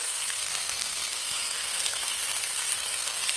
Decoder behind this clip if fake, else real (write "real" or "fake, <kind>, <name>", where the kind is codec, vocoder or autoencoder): fake, codec, SNAC